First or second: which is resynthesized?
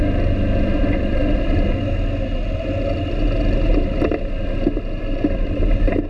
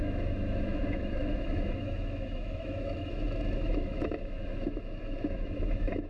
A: second